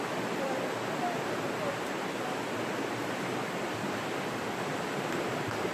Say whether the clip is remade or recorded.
recorded